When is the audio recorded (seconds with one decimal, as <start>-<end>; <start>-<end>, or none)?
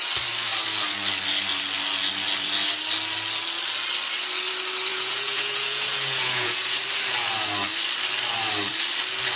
0.0-4.9; 6.8-9.4